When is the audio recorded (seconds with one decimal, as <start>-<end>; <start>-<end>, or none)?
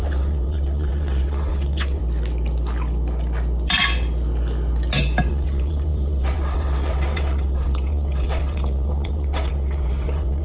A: 2.0-5.3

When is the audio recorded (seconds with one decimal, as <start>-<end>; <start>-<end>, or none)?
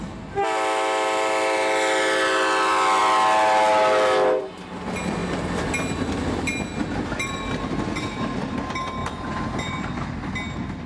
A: 0.0-9.0; 9.9-10.9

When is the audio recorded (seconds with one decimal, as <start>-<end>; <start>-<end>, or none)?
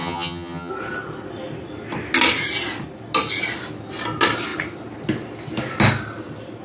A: 0.7-6.6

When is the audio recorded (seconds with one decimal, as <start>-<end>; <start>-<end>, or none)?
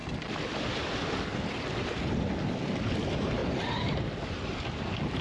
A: 2.3-5.2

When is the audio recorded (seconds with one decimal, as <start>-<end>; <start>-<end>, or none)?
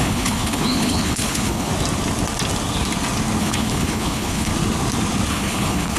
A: 1.7-3.4; 4.5-5.3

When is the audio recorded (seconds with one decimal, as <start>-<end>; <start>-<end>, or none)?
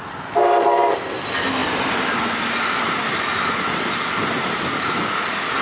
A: 0.0-5.6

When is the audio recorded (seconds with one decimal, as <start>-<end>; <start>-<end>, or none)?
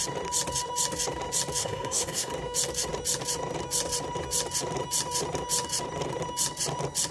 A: 0.0-1.6; 2.3-7.1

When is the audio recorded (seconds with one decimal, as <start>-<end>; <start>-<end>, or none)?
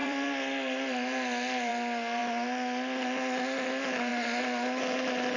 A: 1.7-5.4